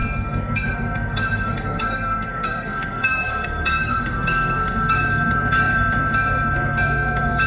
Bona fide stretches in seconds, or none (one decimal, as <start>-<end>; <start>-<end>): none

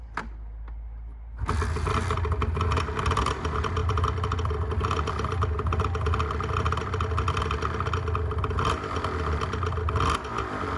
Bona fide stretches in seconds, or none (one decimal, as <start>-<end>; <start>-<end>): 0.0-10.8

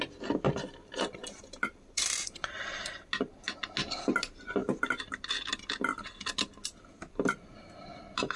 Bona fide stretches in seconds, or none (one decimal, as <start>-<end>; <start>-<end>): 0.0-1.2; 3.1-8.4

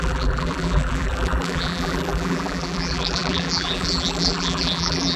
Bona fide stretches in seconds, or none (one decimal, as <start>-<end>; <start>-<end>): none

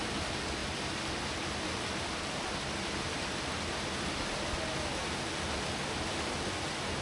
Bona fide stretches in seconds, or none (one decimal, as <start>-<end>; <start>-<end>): 0.0-7.0